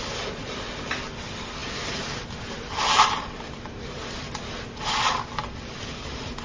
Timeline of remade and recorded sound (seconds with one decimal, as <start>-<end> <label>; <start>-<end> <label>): 0.0-6.4 recorded